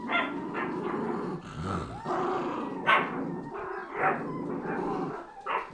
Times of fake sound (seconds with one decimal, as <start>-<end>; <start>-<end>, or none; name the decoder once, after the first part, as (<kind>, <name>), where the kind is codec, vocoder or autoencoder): none